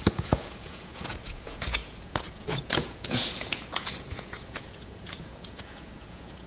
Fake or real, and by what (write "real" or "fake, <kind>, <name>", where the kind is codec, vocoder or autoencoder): fake, vocoder, Vocos